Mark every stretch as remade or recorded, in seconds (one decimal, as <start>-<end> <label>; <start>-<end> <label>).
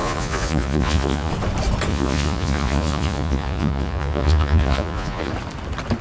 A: 0.0-1.3 remade; 1.3-1.9 recorded; 1.9-5.3 remade; 5.3-6.0 recorded